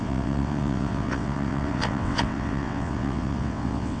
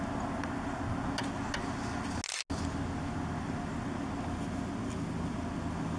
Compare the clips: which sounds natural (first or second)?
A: second